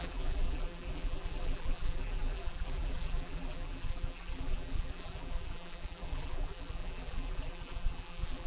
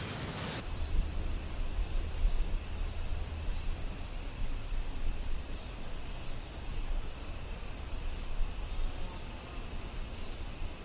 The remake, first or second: first